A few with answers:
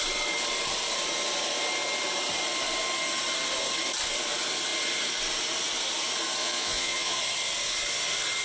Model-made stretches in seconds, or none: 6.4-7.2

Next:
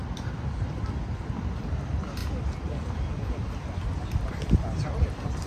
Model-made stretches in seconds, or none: none

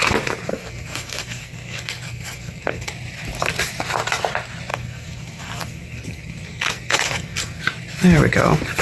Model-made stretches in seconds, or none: 0.5-2.9; 4.7-7.6

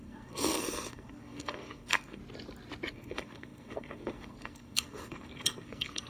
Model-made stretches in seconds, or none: 0.0-2.2; 2.9-6.1

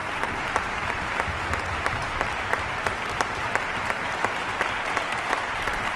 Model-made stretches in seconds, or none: 0.0-0.9; 2.0-5.6

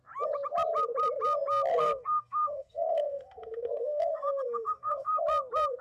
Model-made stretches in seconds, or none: 1.7-5.2